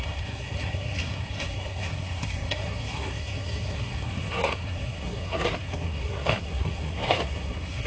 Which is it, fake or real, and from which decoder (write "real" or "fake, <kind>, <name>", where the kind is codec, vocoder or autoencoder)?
fake, codec, SNAC